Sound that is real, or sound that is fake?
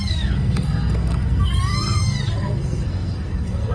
fake